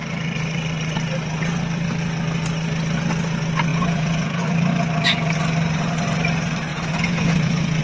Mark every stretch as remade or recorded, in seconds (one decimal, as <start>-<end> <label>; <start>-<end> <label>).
0.0-3.7 recorded; 3.7-4.4 remade; 4.4-6.7 recorded; 6.7-7.8 remade